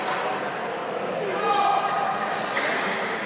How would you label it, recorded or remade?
recorded